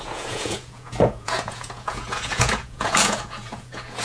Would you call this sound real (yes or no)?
no